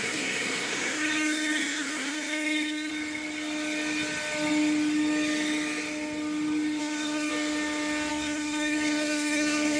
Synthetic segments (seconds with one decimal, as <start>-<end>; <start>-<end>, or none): 0.0-2.9; 6.8-7.3; 8.1-9.8